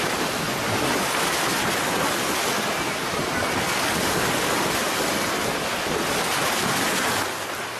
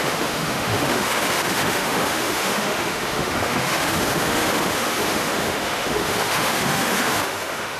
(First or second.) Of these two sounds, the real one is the first